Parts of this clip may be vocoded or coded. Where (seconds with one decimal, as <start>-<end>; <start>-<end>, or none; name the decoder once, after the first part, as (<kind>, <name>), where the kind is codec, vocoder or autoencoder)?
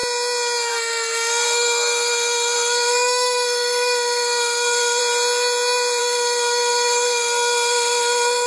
0.7-5.0 (codec, SNAC); 6.0-8.5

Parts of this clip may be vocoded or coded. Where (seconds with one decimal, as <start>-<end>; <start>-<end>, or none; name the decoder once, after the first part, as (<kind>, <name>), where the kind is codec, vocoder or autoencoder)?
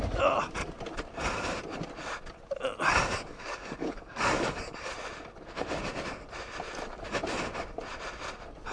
3.3-4.9 (codec, DAC)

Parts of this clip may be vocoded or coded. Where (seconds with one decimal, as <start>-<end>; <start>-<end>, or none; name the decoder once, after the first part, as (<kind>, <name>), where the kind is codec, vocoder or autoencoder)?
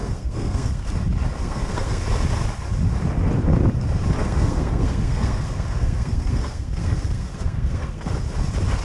0.0-0.9 (codec, SNAC); 1.4-2.0; 4.2-8.1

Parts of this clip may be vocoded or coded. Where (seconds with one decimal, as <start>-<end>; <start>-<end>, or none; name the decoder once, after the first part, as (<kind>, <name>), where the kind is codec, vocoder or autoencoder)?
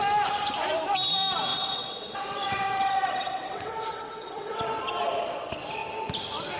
1.5-4.6 (vocoder, WaveNeXt)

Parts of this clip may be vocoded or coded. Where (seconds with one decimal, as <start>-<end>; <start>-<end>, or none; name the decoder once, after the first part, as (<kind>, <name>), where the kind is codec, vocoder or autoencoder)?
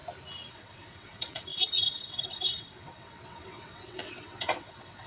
0.5-5.1 (vocoder, WaveNeXt)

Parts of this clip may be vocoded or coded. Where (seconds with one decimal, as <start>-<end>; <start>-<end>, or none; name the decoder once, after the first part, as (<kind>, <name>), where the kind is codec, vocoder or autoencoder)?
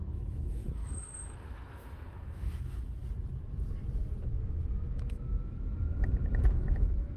0.0-3.0 (autoencoder, DAC-VAE); 4.2-7.2